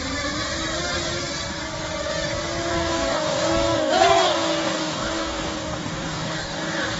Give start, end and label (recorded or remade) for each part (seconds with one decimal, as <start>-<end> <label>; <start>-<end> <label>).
0.0-2.7 recorded; 2.7-7.0 remade